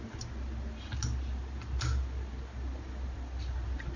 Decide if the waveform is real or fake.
real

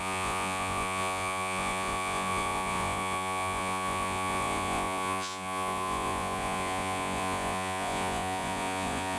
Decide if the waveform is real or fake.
fake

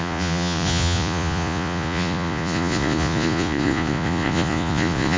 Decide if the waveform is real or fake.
fake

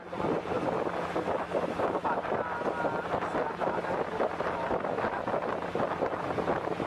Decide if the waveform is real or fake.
real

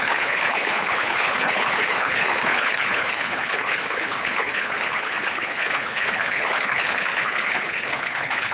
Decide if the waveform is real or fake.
fake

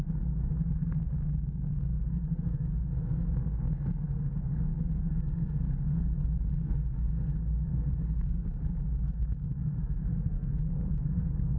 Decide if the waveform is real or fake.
fake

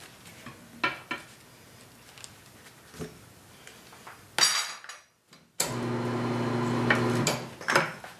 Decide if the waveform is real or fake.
real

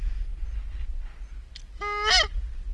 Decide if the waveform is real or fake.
real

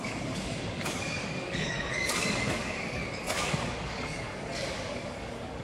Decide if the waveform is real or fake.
fake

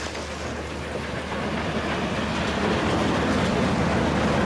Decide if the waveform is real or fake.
real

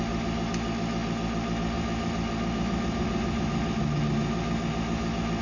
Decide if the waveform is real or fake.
real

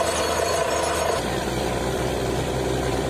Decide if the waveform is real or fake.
fake